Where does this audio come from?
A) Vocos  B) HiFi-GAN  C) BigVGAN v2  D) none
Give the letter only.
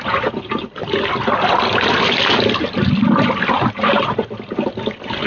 D